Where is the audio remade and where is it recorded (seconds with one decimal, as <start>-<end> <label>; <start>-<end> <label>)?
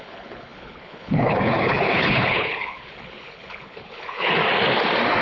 0.0-4.4 remade; 4.4-5.2 recorded